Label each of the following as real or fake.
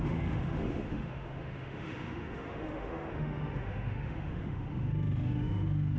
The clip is fake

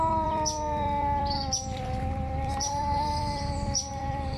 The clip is fake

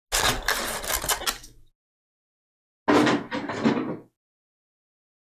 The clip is real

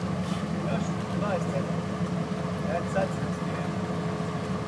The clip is real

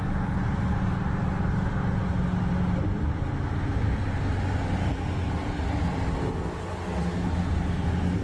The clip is real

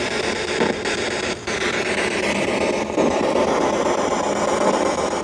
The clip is real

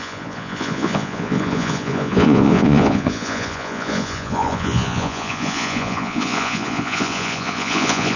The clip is fake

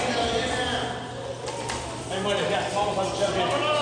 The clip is real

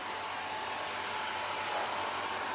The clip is real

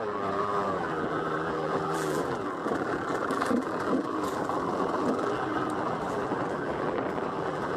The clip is fake